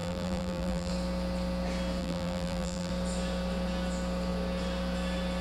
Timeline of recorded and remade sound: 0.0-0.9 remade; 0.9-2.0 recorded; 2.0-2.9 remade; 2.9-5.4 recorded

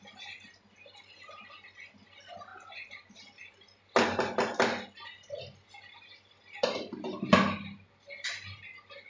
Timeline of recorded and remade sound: 0.0-9.1 recorded

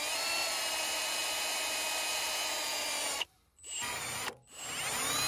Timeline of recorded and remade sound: 0.0-5.3 recorded

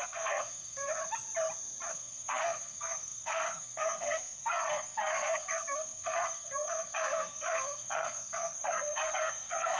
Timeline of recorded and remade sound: 0.0-0.9 remade; 0.9-1.9 recorded; 1.9-9.8 remade

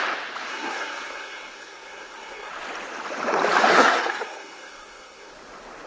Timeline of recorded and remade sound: 0.0-0.5 recorded; 0.5-2.5 remade; 2.5-3.7 recorded; 3.7-5.3 remade; 5.3-5.9 recorded

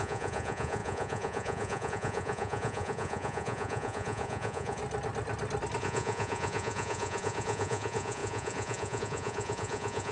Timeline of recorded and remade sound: 0.0-4.8 remade; 4.8-5.8 recorded; 5.8-10.1 remade

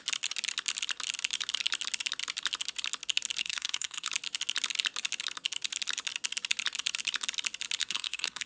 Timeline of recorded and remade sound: 0.0-3.4 recorded; 3.4-4.1 remade; 4.1-7.8 recorded; 7.8-8.5 remade

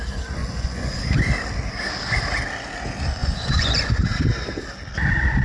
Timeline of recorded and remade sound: 0.0-0.4 recorded; 0.4-1.0 remade; 1.0-3.2 recorded; 3.2-4.0 remade; 4.0-5.4 recorded